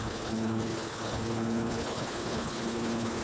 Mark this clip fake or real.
fake